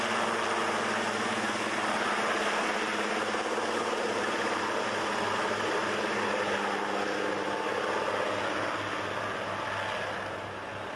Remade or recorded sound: recorded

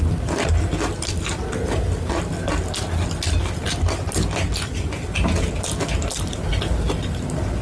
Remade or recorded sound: recorded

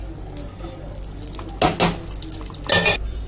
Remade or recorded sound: recorded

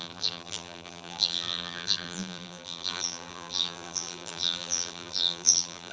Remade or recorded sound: remade